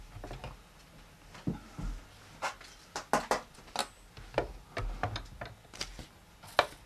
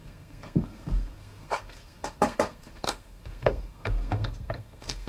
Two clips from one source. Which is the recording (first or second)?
first